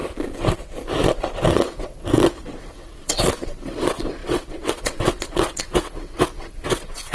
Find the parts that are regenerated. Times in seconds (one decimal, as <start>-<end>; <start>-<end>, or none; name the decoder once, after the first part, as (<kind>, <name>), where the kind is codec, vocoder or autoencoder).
1.5-7.1 (vocoder, WaveNeXt)